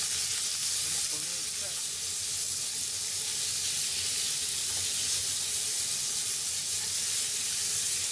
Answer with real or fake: real